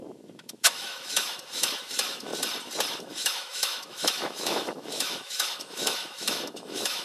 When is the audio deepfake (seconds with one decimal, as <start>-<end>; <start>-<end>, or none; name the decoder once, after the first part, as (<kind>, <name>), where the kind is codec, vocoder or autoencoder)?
0.0-2.3 (autoencoder, DAC-VAE); 3.0-7.0